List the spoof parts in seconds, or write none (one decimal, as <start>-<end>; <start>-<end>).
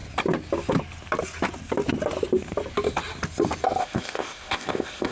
3.8-5.1